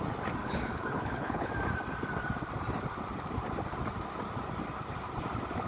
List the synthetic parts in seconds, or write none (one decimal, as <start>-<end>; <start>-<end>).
0.4-1.5